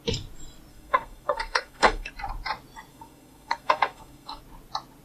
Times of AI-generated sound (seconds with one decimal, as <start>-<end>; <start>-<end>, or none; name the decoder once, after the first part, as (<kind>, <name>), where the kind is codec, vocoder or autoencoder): 0.7-2.1 (codec, SNAC); 2.9-4.4